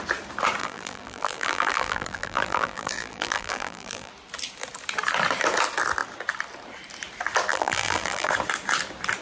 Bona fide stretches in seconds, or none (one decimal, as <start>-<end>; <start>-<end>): 0.0-0.6; 4.1-7.5; 8.3-9.2